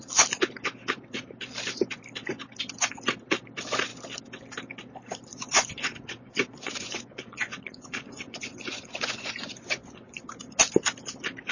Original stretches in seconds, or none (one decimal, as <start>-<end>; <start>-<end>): 0.0-5.3; 10.2-11.5